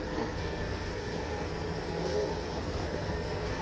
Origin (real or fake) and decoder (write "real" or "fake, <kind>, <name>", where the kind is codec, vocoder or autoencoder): fake, codec, SNAC